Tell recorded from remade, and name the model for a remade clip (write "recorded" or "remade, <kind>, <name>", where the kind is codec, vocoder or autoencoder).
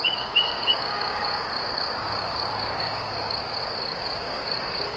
remade, codec, DAC